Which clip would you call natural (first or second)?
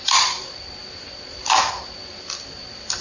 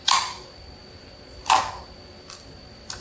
second